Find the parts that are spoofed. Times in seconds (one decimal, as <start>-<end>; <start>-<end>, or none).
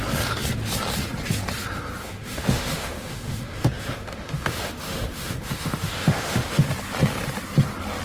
2.0-6.7